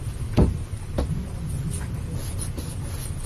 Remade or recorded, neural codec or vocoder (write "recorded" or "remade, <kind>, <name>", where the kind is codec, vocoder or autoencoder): recorded